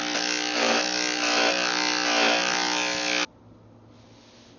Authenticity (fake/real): real